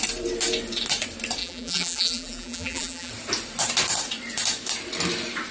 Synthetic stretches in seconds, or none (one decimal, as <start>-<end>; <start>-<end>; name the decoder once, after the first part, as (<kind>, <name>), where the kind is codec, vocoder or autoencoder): 1.4-3.1 (vocoder, BigVGAN v2)